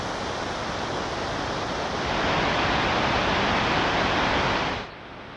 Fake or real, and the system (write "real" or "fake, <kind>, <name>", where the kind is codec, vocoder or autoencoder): real